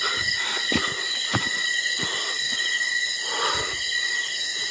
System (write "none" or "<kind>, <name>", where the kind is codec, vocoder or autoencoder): none